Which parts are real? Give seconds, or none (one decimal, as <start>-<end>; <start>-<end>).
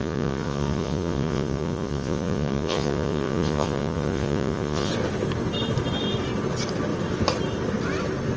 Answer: 4.9-8.4